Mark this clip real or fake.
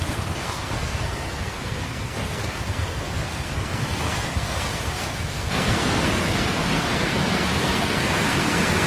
fake